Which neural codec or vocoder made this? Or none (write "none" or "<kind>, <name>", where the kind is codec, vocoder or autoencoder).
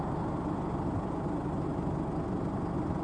none